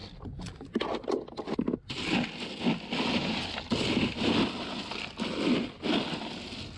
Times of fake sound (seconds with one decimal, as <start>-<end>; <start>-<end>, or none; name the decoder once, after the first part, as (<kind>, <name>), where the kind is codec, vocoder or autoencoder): none